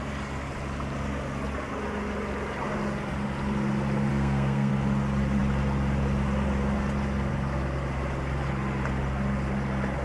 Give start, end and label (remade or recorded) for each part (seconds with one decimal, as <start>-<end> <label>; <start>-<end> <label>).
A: 0.0-4.1 recorded; 4.1-4.7 remade; 4.7-10.0 recorded